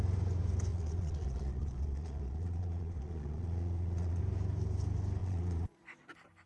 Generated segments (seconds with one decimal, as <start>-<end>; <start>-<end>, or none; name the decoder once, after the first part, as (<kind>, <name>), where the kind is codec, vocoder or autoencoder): 0.7-4.2 (vocoder, Vocos); 5.2-6.1